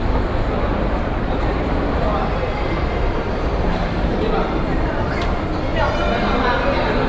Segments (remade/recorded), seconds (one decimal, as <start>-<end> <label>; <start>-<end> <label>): 0.0-0.7 recorded; 0.7-5.0 remade; 5.0-7.1 recorded